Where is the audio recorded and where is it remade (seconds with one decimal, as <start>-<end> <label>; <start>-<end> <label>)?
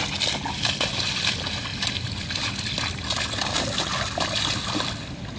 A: 0.0-5.4 recorded